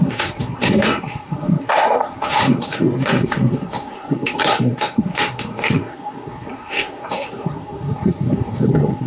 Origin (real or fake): fake